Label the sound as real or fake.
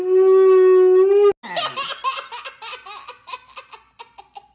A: real